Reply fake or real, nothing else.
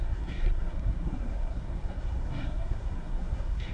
fake